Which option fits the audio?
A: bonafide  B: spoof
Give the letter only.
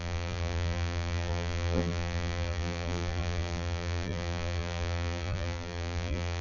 B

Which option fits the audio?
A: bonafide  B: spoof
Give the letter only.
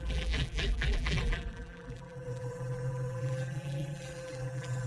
B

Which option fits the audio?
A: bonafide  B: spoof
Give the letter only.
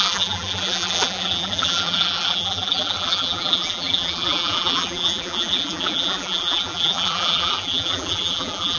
B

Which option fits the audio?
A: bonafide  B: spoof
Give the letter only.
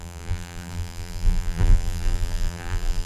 B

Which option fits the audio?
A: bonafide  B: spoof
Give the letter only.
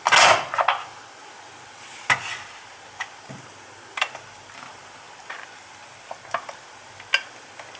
A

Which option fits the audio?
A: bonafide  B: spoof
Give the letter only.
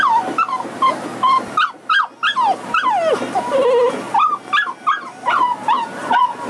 A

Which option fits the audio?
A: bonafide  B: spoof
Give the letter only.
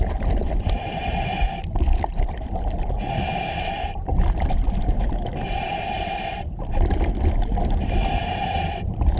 B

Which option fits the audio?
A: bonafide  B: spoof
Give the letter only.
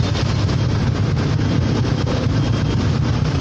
A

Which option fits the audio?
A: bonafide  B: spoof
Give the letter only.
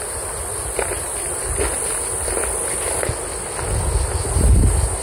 A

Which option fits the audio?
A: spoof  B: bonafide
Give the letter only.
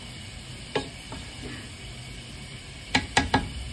A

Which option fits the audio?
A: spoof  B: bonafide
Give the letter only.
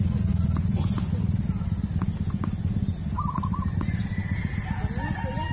B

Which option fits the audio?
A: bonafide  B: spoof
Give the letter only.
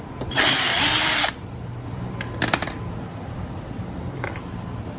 B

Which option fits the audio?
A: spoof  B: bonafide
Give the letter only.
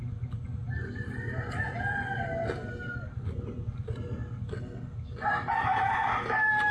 B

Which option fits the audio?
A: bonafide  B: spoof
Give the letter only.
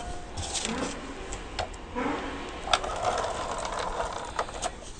A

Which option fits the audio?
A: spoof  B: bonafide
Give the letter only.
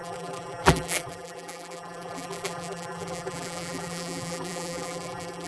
A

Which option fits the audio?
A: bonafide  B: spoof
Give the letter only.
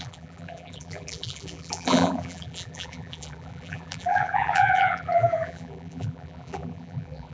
B